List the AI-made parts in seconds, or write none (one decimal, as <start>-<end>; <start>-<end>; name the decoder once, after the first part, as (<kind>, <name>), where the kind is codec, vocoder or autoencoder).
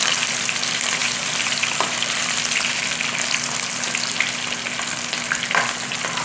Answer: 1.0-2.9 (vocoder, BigVGAN v2)